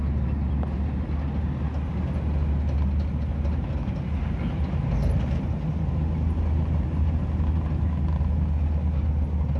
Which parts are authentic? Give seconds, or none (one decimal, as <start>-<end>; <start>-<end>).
0.0-9.6